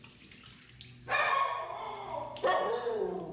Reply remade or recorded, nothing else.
recorded